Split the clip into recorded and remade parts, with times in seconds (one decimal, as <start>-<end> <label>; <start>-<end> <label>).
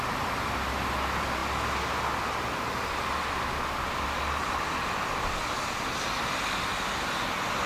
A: 0.0-7.7 recorded